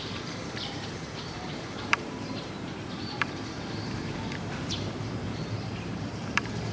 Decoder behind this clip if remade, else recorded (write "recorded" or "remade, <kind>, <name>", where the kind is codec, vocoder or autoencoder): remade, vocoder, BigVGAN v2